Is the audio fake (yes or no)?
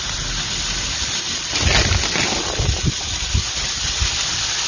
no